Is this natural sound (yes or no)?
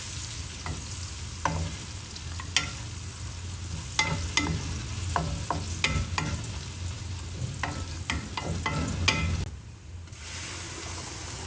yes